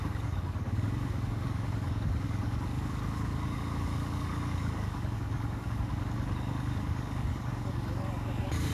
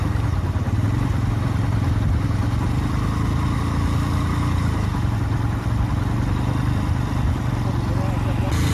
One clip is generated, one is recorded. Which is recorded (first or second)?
second